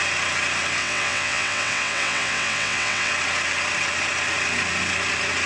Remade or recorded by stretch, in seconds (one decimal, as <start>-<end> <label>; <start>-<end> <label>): 0.0-0.8 recorded; 0.8-3.1 remade; 3.1-5.5 recorded